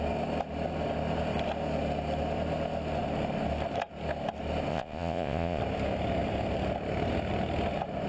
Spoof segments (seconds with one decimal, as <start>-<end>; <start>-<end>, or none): 4.7-5.6

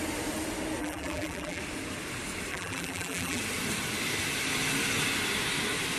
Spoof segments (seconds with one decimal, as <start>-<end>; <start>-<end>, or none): 0.8-1.6; 2.5-3.4

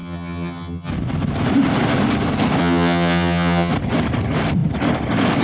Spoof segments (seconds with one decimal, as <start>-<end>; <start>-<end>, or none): 0.0-0.9; 2.6-3.7

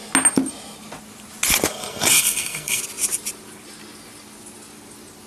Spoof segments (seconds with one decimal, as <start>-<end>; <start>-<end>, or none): 1.7-2.8

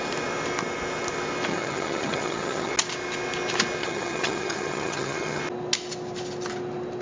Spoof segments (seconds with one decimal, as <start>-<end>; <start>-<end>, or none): 1.5-2.7; 3.8-5.4

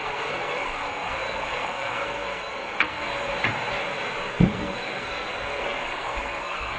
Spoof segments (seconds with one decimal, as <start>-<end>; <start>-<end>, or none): 0.0-3.3; 4.3-6.8